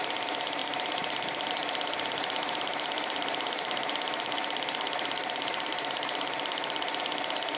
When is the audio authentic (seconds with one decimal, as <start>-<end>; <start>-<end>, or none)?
0.0-0.6; 1.5-2.4; 7.0-7.6